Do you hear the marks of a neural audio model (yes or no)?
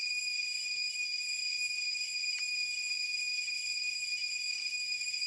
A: yes